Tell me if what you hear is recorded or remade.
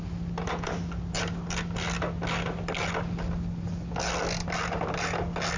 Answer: recorded